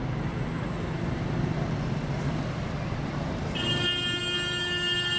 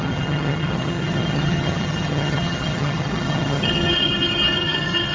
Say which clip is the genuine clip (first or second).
first